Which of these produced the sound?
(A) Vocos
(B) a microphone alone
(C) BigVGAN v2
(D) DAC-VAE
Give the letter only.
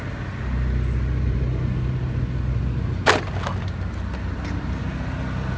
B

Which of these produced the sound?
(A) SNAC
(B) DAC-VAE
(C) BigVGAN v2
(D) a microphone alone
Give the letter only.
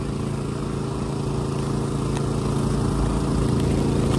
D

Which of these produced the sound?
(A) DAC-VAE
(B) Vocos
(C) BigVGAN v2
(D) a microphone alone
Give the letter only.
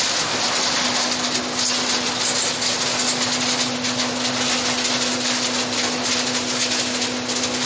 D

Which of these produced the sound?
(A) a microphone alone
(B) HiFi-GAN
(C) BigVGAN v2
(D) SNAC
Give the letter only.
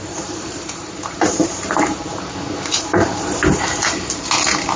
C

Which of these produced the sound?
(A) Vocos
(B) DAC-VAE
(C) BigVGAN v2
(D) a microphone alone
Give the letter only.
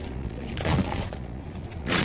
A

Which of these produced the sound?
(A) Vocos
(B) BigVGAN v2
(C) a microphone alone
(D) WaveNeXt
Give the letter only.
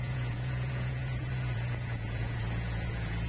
A